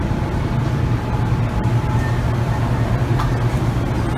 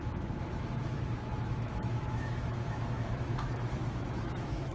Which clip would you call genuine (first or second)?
first